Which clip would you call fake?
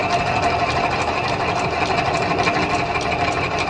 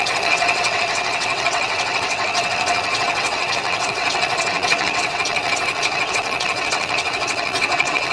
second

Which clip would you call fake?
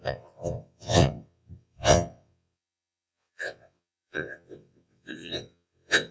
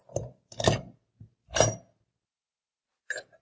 first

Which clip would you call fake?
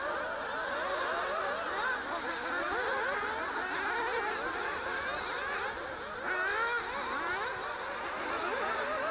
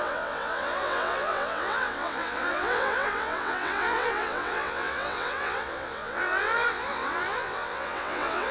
second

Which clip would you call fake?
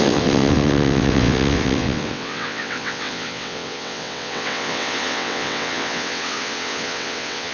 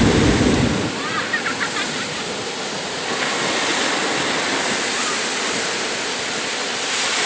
first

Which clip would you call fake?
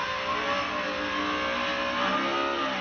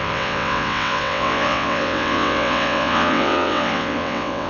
second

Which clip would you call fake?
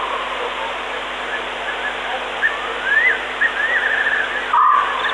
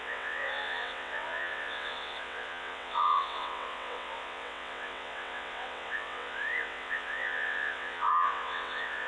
second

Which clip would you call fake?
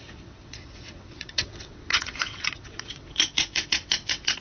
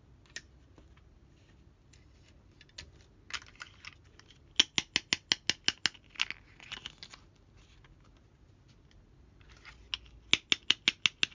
first